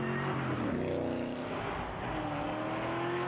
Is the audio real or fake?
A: real